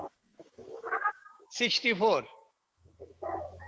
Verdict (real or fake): fake